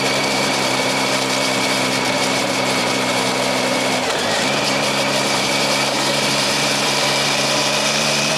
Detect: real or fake fake